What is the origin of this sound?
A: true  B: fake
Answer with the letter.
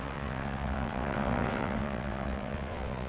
B